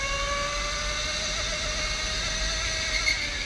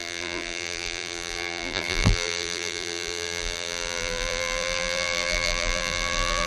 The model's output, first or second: second